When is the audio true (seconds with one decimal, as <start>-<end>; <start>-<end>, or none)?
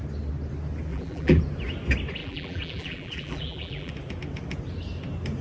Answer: 0.0-0.9; 1.4-2.2; 3.9-5.4